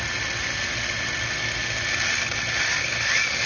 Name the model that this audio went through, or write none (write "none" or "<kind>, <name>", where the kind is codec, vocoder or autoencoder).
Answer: none